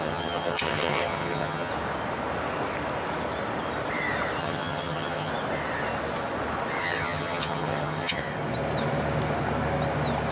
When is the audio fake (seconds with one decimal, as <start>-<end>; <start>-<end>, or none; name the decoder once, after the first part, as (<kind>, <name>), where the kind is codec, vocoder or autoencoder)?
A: 0.0-1.7 (vocoder, HiFi-GAN); 4.4-5.3; 6.8-8.2